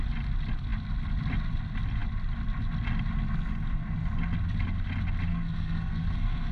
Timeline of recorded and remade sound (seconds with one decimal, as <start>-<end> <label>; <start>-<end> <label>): 0.0-5.3 recorded; 5.3-6.5 remade